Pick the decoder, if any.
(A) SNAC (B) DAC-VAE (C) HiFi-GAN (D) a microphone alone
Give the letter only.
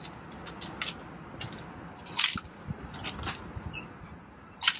D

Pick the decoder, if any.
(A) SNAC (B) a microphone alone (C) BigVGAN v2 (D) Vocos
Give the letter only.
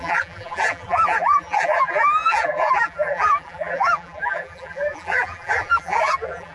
C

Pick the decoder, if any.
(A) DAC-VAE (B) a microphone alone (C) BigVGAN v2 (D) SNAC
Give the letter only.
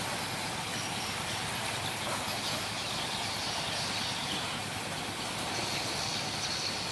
B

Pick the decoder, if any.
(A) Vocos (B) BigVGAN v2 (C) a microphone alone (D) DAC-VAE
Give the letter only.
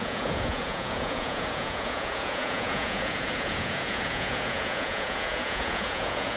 A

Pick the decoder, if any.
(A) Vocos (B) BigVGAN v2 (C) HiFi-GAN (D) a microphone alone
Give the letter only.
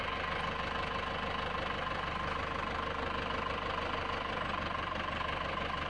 D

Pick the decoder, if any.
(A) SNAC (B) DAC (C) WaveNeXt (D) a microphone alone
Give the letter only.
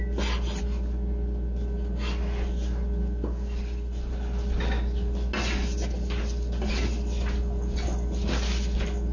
D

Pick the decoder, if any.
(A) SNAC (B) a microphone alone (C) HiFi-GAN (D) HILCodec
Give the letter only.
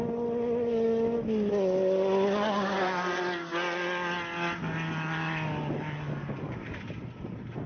B